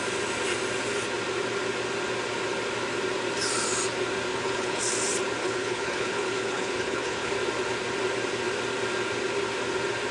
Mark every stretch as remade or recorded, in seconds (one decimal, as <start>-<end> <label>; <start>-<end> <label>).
0.0-4.3 recorded; 4.3-4.8 remade; 4.8-5.4 recorded; 5.4-7.3 remade; 7.3-10.1 recorded